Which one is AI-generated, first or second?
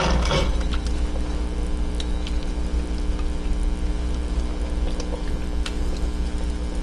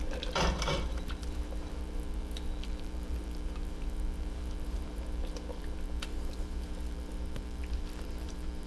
second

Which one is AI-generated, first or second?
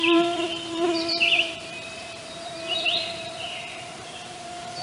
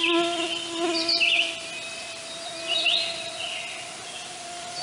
first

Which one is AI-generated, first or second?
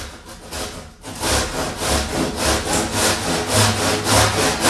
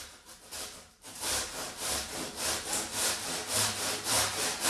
second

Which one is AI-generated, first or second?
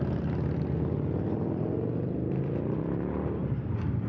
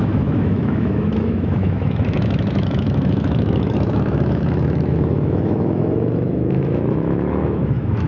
second